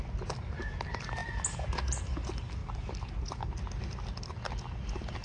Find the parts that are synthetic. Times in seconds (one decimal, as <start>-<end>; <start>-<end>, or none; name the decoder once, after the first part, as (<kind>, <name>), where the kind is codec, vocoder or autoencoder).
none